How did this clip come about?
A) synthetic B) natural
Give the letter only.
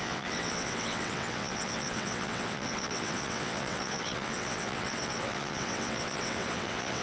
A